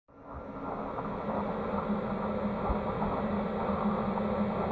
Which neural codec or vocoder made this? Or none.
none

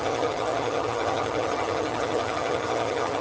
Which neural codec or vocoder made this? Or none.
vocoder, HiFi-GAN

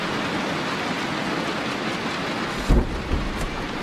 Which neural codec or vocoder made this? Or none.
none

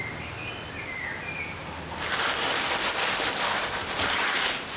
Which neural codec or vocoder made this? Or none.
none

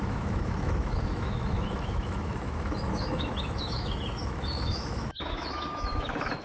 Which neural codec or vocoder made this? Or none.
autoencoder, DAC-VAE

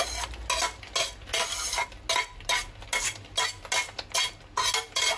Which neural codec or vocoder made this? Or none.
none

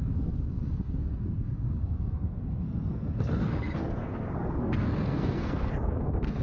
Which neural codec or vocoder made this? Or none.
codec, SNAC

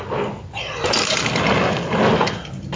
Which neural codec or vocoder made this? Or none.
none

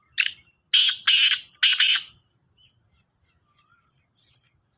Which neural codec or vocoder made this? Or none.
none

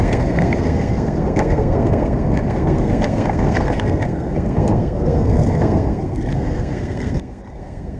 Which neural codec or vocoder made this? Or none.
codec, SNAC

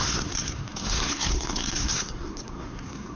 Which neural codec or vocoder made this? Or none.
codec, SNAC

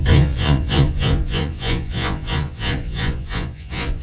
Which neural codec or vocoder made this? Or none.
vocoder, Vocos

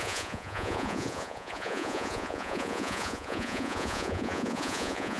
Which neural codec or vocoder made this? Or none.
vocoder, Vocos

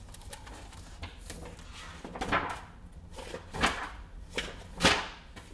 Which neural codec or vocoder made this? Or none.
none